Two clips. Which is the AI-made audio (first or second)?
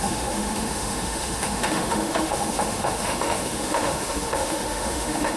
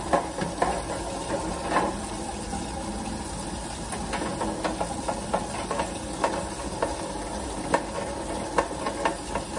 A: first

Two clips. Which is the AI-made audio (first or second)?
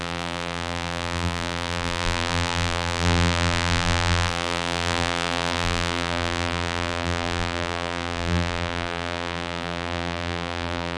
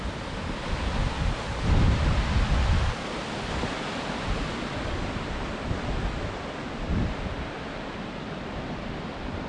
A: first